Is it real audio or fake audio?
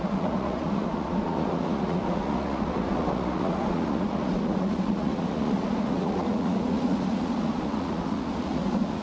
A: fake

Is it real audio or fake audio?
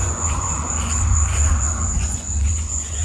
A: fake